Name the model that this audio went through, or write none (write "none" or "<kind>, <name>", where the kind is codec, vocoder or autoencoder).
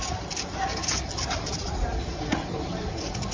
none